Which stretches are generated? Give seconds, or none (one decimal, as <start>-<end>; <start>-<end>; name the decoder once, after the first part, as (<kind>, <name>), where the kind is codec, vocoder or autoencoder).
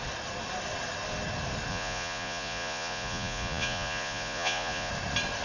1.7-4.9 (vocoder, Vocos)